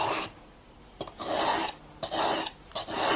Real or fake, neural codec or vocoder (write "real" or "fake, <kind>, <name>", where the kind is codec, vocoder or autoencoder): real